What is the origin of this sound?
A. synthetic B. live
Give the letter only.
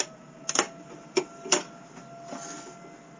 B